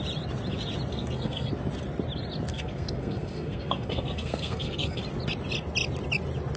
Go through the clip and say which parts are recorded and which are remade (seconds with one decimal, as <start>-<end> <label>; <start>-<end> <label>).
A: 0.0-0.9 recorded; 0.9-1.5 remade; 1.5-2.5 recorded; 2.5-5.0 remade; 5.0-6.6 recorded